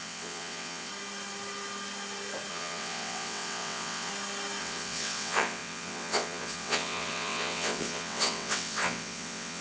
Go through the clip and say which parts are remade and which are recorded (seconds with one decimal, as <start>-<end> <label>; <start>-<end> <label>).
0.0-0.9 remade; 0.9-2.5 recorded; 2.5-4.1 remade; 4.1-4.6 recorded; 4.6-9.6 remade